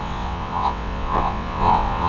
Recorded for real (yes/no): no